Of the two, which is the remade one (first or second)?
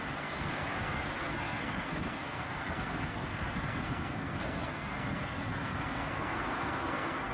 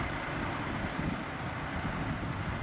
first